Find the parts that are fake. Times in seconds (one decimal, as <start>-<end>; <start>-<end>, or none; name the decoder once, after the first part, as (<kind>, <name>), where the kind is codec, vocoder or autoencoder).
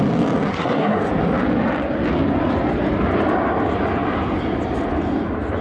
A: 0.5-1.0 (codec, SNAC)